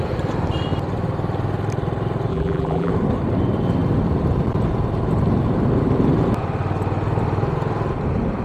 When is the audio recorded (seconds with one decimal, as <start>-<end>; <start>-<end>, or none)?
0.0-2.3; 2.9-8.4

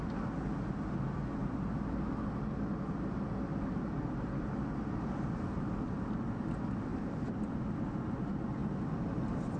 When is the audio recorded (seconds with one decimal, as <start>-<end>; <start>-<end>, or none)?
0.0-6.9; 7.6-9.6

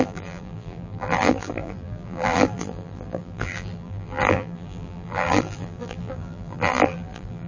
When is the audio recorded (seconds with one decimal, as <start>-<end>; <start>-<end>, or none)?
none